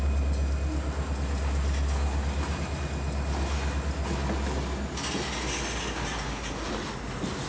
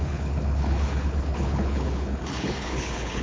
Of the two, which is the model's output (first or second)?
second